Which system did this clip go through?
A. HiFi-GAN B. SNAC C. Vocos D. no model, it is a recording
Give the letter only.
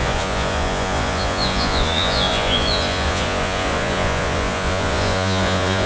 C